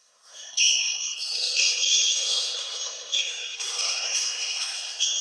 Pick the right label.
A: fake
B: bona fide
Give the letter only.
A